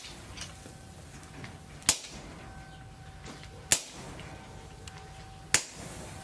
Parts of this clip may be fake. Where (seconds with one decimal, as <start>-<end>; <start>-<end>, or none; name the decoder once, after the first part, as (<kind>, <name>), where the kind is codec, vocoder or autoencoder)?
none